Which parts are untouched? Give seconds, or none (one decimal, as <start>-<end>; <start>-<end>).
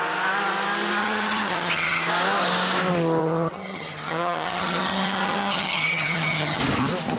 0.0-1.0; 2.0-3.2; 6.6-7.2